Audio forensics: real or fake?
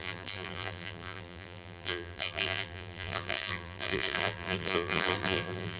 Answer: fake